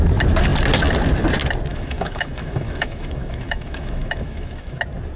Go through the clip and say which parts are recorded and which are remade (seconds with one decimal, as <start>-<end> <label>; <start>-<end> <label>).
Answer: 0.0-1.7 recorded; 1.7-4.8 remade; 4.8-5.2 recorded